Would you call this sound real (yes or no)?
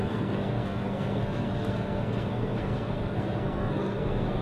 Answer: no